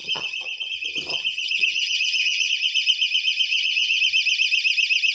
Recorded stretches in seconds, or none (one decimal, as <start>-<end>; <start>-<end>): 0.7-1.1; 2.5-3.5; 4.0-5.1

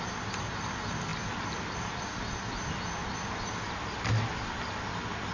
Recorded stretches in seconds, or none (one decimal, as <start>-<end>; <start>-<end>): 0.0-5.3